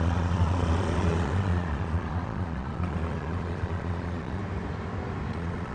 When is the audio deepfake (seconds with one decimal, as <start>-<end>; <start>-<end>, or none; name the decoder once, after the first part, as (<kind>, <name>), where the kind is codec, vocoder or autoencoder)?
0.0-4.4 (vocoder, Vocos); 5.3-5.7